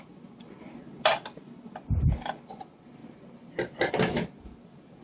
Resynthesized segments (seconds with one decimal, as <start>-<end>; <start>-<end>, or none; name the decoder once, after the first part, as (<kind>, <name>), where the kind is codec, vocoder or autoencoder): none